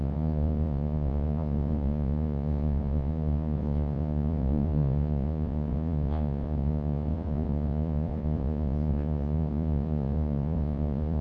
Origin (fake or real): fake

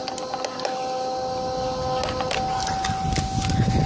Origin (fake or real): real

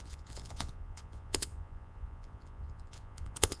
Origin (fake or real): fake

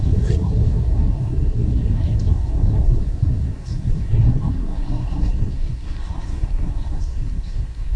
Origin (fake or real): fake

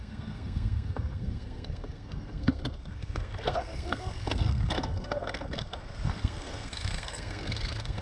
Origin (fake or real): fake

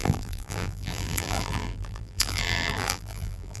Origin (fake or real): fake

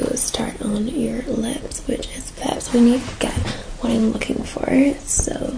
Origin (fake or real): real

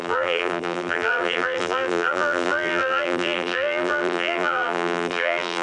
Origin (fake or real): fake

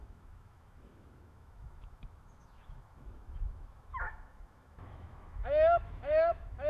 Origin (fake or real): fake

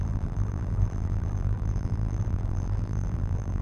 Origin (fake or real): fake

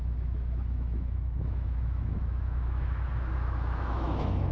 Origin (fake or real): fake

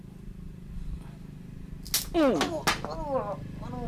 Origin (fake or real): real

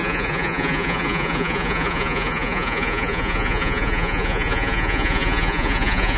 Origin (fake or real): fake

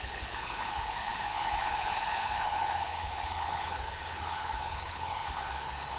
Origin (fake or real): fake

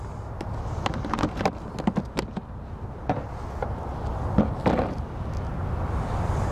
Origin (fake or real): real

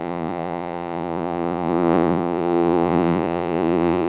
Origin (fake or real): fake